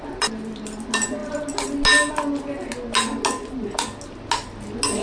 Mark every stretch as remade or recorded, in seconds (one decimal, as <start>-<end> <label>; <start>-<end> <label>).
0.0-5.0 recorded